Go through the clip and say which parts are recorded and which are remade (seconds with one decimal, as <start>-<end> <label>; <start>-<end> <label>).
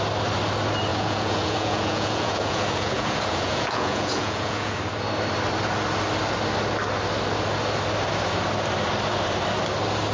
0.0-0.9 recorded; 0.9-4.8 remade; 4.8-10.1 recorded